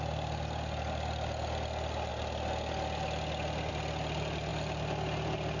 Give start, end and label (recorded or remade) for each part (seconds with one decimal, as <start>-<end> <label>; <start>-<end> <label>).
0.0-5.6 recorded